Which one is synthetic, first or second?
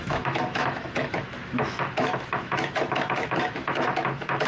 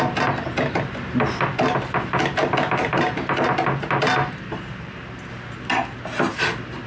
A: first